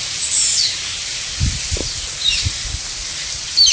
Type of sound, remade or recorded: recorded